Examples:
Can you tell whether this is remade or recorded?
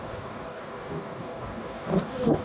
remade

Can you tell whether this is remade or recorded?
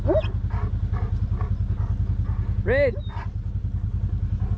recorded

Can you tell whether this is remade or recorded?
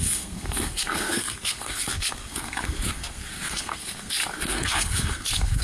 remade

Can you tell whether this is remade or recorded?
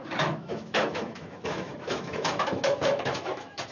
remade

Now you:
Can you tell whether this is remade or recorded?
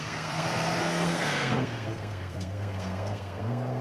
remade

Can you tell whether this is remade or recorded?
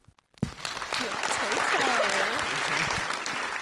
recorded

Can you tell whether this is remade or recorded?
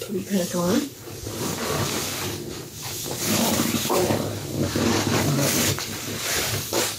remade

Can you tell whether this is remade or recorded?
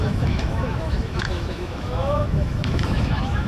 remade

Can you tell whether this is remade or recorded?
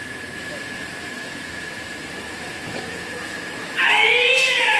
remade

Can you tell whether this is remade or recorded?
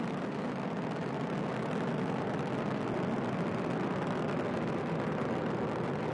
recorded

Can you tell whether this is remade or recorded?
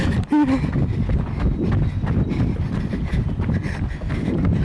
recorded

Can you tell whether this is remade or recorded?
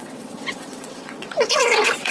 remade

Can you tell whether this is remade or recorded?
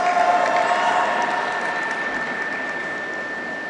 recorded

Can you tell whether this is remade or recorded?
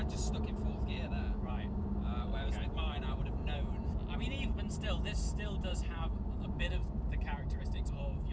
remade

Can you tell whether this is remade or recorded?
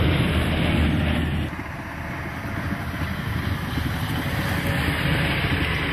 recorded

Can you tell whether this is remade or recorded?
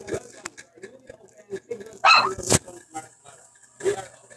recorded